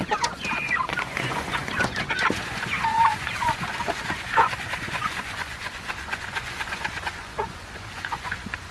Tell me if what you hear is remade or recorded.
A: remade